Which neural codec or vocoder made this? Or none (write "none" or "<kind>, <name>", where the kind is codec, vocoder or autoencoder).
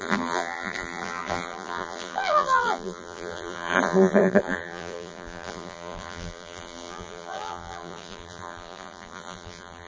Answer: vocoder, BigVGAN v2